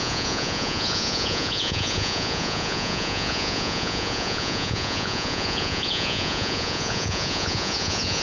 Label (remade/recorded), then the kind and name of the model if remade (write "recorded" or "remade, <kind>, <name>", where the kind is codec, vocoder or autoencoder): remade, vocoder, Vocos